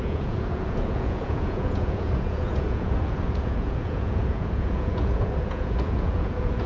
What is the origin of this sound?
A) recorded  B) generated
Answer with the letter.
B